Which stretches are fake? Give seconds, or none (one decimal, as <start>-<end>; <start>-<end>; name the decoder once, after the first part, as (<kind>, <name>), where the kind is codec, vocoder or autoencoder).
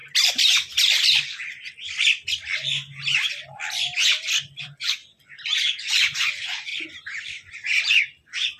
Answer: 4.6-5.0 (vocoder, BigVGAN v2); 5.6-6.7; 7.5-8.6